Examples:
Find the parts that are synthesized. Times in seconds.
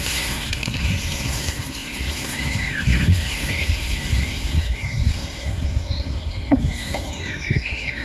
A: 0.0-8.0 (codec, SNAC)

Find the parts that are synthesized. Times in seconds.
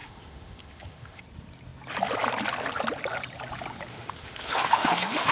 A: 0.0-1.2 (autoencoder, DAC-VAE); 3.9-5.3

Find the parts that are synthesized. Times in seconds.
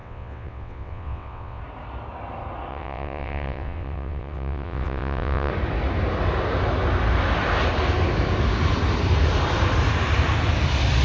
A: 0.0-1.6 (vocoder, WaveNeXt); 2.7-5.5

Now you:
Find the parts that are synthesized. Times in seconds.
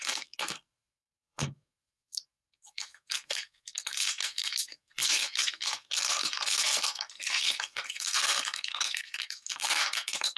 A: 0.0-10.4 (codec, SNAC)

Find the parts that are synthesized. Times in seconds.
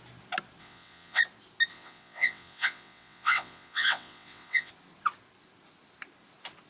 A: 0.6-1.2 (vocoder, WaveNeXt); 1.7-4.7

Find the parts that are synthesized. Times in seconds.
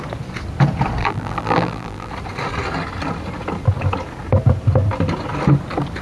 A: 1.0-2.1 (vocoder, BigVGAN v2)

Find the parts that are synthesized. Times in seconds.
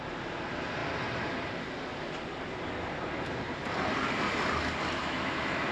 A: 5.0-5.7 (autoencoder, DAC-VAE)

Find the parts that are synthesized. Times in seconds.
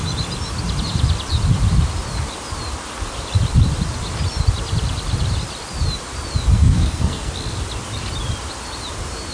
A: 6.5-7.3 (codec, SNAC)